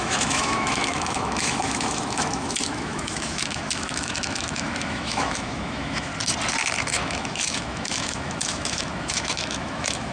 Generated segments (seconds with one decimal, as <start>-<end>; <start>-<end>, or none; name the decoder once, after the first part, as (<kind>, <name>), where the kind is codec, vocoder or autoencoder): 0.0-6.1 (autoencoder, DAC-VAE); 6.9-10.1